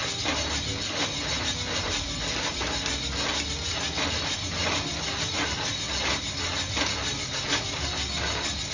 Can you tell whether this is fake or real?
real